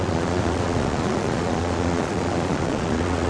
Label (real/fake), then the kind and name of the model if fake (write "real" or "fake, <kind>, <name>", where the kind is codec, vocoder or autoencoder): fake, vocoder, Vocos